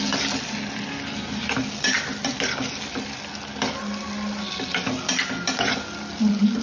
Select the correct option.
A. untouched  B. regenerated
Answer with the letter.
A